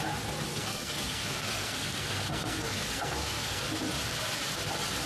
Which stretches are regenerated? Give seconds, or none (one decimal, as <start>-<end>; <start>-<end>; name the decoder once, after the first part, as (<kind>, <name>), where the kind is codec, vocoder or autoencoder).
0.5-3.6 (codec, SNAC)